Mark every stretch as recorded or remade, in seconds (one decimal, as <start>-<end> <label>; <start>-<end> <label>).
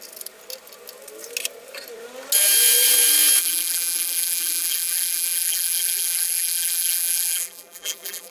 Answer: 0.0-3.4 recorded; 3.4-8.3 remade